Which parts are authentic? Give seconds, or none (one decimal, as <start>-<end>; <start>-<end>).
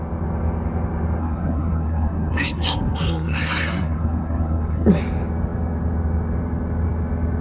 0.0-1.2; 5.0-7.4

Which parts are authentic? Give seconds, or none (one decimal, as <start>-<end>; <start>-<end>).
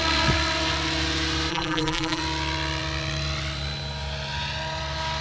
0.0-1.5; 2.2-5.2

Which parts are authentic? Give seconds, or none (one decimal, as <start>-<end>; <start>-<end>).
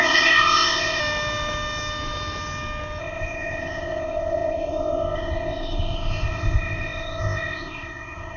1.0-3.0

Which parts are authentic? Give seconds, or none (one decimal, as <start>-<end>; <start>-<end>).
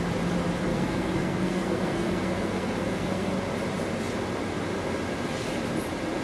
0.0-0.7; 3.4-6.2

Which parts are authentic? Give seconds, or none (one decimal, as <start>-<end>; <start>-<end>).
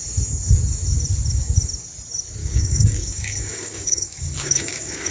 0.0-2.4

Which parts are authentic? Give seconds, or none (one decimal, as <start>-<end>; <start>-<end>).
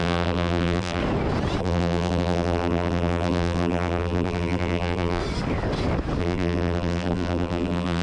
1.0-1.6; 5.2-6.2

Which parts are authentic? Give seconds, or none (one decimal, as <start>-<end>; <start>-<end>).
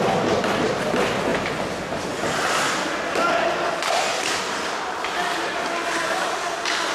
0.0-6.9